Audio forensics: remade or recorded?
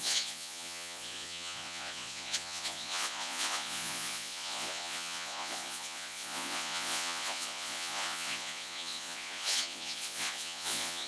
remade